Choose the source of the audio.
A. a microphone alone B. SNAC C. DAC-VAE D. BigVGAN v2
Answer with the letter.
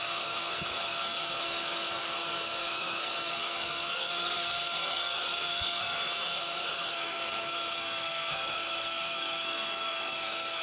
B